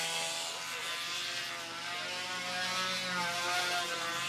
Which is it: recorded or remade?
recorded